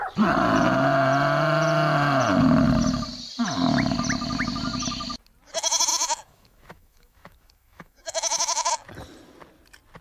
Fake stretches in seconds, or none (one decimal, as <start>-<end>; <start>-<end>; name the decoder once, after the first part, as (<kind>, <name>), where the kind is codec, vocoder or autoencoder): 5.9-8.7 (autoencoder, DAC-VAE)